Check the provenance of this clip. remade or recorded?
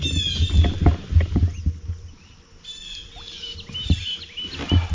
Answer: recorded